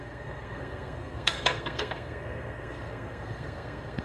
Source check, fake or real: fake